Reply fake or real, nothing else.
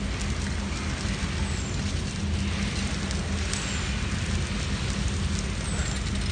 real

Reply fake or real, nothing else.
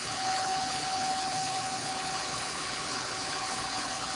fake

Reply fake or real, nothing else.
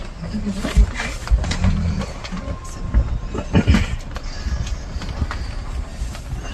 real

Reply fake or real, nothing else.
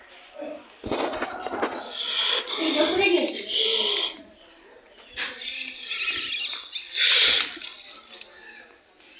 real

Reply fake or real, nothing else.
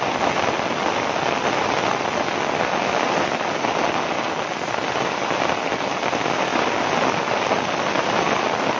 real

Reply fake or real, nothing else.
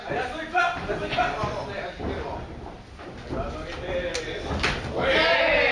real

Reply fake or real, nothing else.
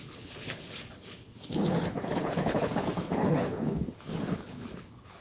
fake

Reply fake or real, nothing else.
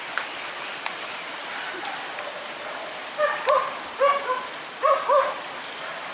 real